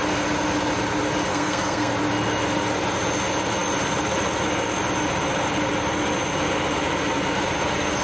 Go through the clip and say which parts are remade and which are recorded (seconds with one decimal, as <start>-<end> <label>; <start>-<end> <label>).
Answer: 0.0-1.3 recorded; 1.3-1.9 remade; 1.9-8.0 recorded